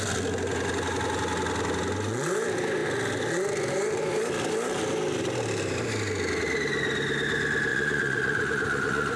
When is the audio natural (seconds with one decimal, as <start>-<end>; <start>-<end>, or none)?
0.0-7.7